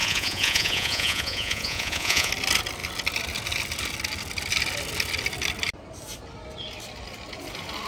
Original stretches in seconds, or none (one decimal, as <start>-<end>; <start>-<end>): 2.3-7.9